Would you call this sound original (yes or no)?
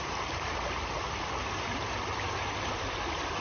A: yes